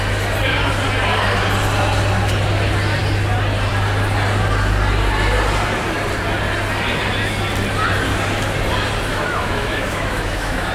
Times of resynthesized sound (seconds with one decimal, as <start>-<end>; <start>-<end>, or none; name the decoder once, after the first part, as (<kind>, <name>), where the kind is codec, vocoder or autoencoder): 9.1-10.7 (autoencoder, DAC-VAE)